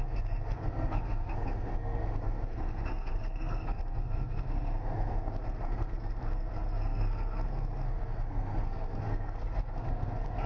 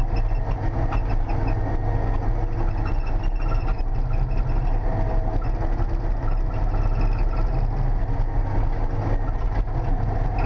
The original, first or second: second